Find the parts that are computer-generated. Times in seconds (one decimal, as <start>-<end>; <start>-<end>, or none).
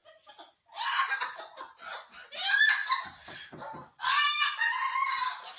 none